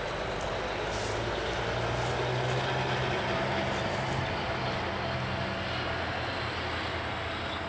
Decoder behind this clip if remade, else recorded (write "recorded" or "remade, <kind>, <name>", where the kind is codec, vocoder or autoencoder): recorded